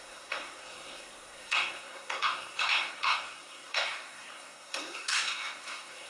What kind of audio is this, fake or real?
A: fake